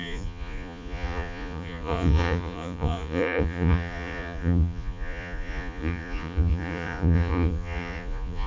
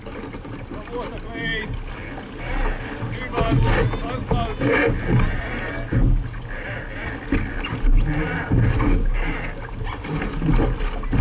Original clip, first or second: second